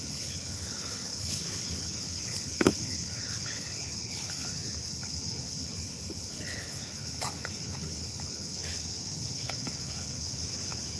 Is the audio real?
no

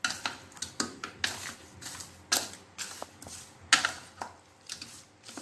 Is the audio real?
yes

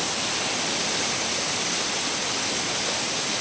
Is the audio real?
yes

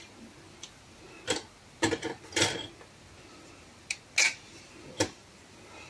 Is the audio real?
yes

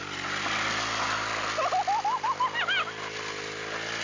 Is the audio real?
yes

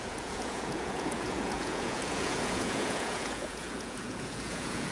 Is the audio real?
no